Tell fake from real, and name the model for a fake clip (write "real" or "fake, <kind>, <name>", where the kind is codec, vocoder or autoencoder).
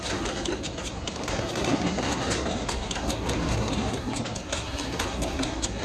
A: fake, codec, SNAC